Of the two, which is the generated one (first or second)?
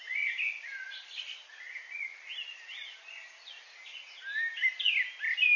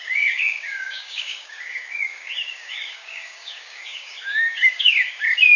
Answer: second